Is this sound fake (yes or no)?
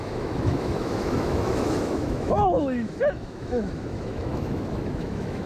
yes